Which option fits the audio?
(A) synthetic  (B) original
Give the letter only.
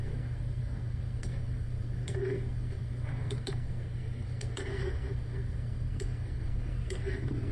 A